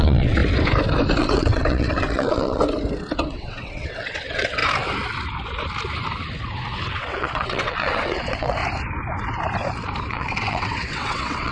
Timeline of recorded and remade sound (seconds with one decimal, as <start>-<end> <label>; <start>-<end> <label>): 0.0-0.4 remade; 0.4-1.2 recorded; 1.2-2.6 remade; 2.6-3.3 recorded; 3.3-4.6 remade; 4.6-6.9 recorded; 6.9-8.6 remade; 8.6-10.1 recorded; 10.1-11.5 remade